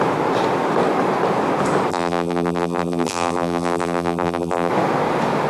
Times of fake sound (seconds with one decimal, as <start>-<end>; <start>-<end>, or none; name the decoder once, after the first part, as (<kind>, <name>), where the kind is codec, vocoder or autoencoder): 1.9-4.7 (vocoder, BigVGAN v2)